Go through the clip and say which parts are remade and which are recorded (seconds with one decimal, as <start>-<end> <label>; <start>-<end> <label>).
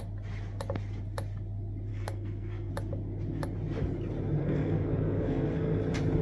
0.0-1.9 recorded; 1.9-2.7 remade; 2.7-4.4 recorded; 4.4-5.8 remade; 5.8-6.2 recorded